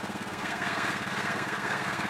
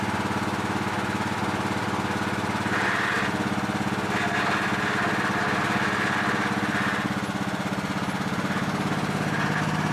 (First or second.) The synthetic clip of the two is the first